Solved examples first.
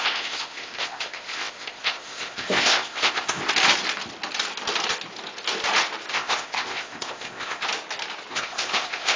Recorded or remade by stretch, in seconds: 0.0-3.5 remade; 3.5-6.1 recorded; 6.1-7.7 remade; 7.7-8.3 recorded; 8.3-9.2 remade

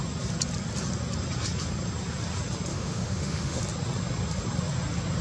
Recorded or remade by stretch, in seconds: 0.0-2.7 recorded; 2.7-3.6 remade; 3.6-5.2 recorded

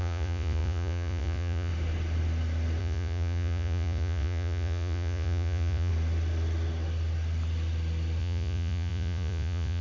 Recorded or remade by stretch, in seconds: 0.0-1.7 remade; 1.7-2.8 recorded; 2.8-5.9 remade; 5.9-8.2 recorded; 8.2-9.8 remade

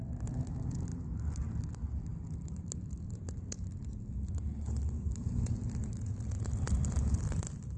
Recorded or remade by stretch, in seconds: 0.0-7.8 recorded

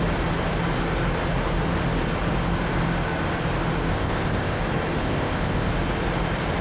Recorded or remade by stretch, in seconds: 0.0-3.9 recorded; 3.9-4.6 remade; 4.6-5.0 recorded; 5.0-5.7 remade; 5.7-6.6 recorded

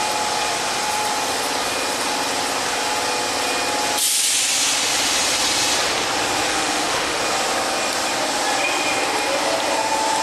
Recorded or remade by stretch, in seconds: 0.0-6.5 recorded; 6.5-7.2 remade; 7.2-10.2 recorded